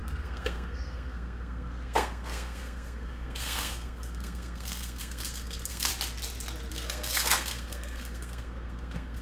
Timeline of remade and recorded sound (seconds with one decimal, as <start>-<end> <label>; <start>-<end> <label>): 0.0-5.9 remade; 5.9-6.7 recorded; 6.7-9.2 remade